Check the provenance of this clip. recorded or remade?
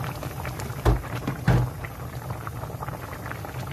recorded